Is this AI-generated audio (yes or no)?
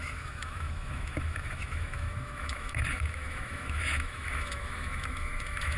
yes